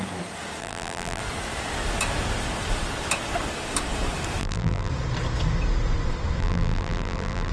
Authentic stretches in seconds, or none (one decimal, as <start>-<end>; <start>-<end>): 0.0-0.6; 1.2-4.4; 4.9-6.4